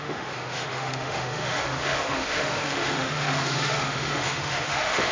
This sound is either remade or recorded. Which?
remade